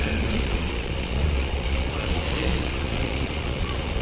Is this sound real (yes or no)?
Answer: no